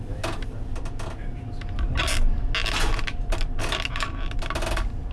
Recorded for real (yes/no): yes